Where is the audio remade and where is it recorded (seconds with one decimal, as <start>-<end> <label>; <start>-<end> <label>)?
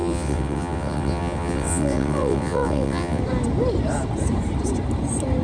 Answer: 0.0-3.2 remade; 3.2-5.4 recorded